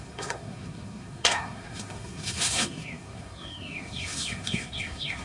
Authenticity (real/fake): fake